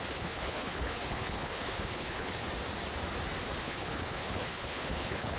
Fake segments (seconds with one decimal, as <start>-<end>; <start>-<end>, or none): 0.0-2.4; 3.6-5.4